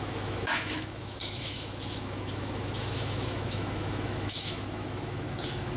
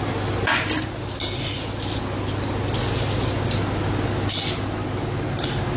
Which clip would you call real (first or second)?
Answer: second